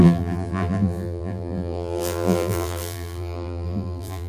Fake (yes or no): yes